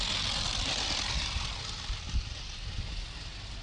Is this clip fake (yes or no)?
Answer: no